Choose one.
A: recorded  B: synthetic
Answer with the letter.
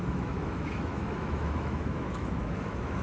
B